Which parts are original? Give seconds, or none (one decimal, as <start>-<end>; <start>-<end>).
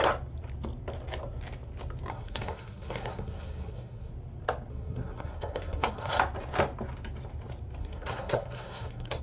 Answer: 0.0-2.1; 4.1-4.7; 6.2-7.8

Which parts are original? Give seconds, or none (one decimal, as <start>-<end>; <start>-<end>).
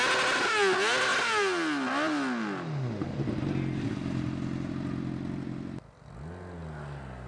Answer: 0.0-7.3